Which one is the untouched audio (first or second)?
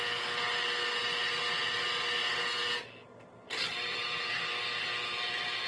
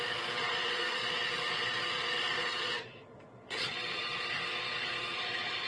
first